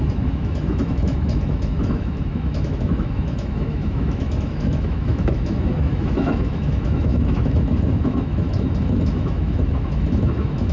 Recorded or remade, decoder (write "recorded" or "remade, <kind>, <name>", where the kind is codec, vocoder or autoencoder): remade, autoencoder, DAC-VAE